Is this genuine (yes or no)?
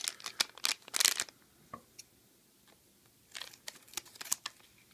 yes